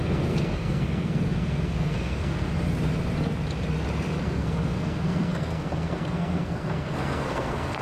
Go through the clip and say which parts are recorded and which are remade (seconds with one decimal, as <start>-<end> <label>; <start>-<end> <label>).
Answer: 0.0-2.5 remade; 2.5-4.2 recorded; 4.2-7.8 remade